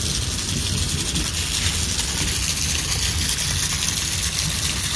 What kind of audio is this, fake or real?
real